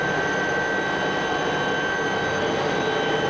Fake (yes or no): no